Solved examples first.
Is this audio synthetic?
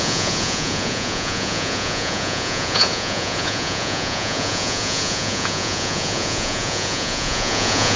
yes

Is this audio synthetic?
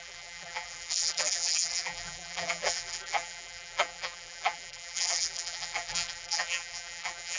yes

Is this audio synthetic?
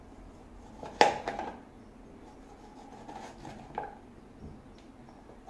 no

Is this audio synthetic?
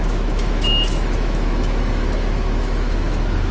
yes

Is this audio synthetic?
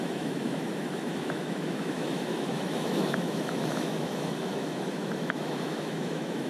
yes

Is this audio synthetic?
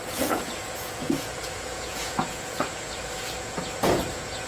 yes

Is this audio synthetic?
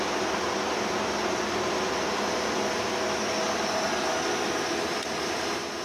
no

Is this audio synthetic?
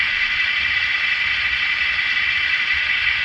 no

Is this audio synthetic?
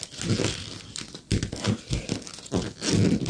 no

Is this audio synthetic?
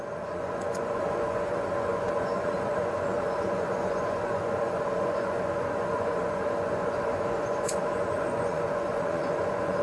yes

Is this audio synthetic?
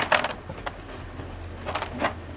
no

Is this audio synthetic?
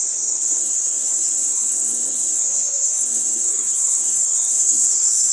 yes